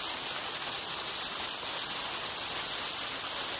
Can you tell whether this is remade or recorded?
recorded